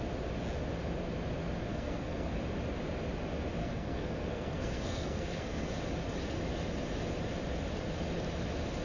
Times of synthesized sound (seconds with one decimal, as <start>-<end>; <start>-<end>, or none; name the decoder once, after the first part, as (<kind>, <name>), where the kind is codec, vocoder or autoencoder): 1.7-2.4 (codec, SNAC); 3.6-5.7